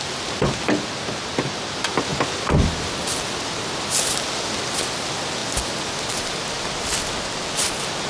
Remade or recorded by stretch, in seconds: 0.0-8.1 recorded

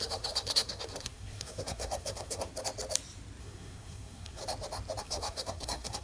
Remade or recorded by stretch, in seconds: 0.0-2.5 remade; 2.5-3.4 recorded; 3.4-4.4 remade; 4.4-5.0 recorded; 5.0-6.0 remade